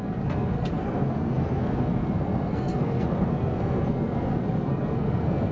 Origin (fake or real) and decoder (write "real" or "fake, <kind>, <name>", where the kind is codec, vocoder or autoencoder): fake, codec, SNAC